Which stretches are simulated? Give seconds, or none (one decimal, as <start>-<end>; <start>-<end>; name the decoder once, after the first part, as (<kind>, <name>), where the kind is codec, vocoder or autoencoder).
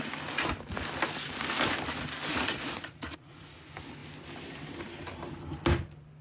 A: 2.3-3.5 (vocoder, Vocos)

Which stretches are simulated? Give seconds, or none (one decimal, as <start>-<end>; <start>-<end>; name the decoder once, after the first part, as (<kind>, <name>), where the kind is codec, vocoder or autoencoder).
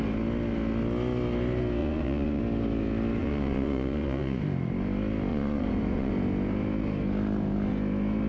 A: 1.8-2.4 (vocoder, Vocos); 3.2-4.4; 5.3-6.1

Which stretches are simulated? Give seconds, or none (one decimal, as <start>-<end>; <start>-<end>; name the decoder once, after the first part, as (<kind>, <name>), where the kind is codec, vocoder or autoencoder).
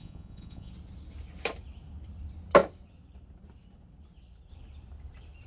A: 0.0-0.7 (vocoder, Vocos)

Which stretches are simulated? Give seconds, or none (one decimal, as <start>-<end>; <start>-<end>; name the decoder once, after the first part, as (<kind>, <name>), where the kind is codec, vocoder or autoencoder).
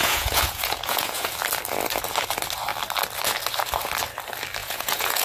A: 0.0-1.3 (vocoder, Vocos); 4.6-5.2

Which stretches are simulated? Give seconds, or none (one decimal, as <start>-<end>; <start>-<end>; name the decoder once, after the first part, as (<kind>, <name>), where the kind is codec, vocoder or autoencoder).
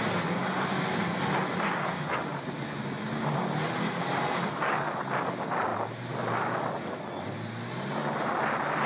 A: none